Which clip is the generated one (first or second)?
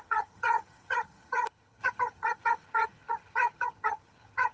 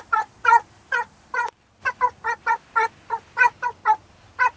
first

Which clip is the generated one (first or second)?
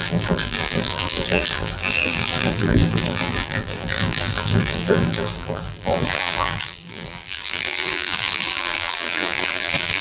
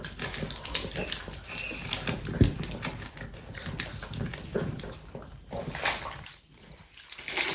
first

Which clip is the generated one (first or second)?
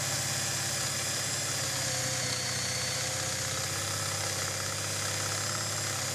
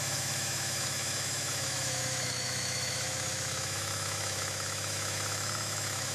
second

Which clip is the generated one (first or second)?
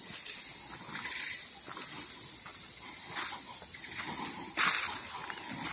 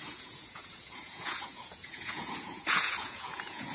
second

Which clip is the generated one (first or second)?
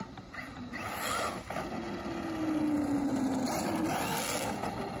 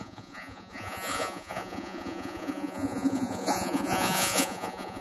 second